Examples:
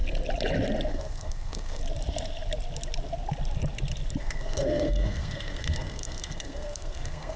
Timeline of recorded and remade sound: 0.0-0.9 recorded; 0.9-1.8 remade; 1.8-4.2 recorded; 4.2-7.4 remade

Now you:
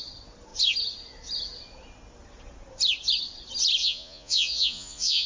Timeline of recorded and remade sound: 0.0-3.8 recorded; 3.8-5.3 remade

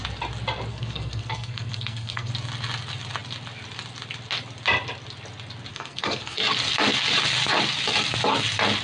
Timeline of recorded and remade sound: 0.0-0.7 recorded; 0.7-2.3 remade; 2.3-5.7 recorded; 5.7-6.4 remade; 6.4-8.8 recorded

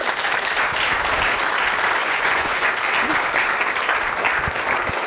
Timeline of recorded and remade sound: 0.0-2.0 recorded; 2.0-2.7 remade; 2.7-5.1 recorded

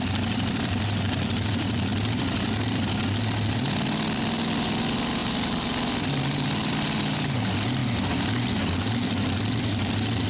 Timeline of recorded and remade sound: 0.0-1.9 remade; 1.9-3.5 recorded; 3.5-7.8 remade; 7.8-8.7 recorded; 8.7-10.3 remade

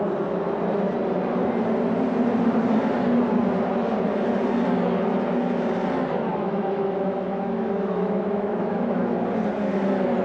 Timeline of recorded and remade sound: 0.0-6.3 recorded; 6.3-9.0 remade; 9.0-10.2 recorded